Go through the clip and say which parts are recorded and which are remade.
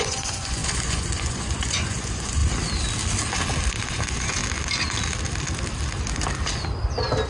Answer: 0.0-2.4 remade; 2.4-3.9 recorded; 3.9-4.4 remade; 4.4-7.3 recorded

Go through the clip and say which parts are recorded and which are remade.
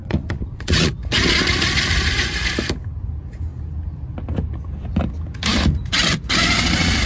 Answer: 0.0-0.9 remade; 0.9-6.4 recorded; 6.4-7.1 remade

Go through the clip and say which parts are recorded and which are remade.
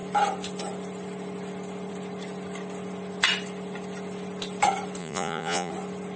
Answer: 0.0-5.0 recorded; 5.0-5.7 remade; 5.7-6.2 recorded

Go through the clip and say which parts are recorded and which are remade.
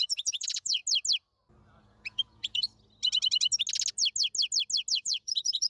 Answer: 0.0-0.8 remade; 0.8-1.8 recorded; 1.8-2.7 remade; 2.7-4.9 recorded; 4.9-5.7 remade